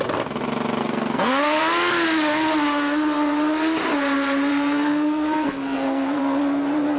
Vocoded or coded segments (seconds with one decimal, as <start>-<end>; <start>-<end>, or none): 0.8-1.6; 4.5-6.2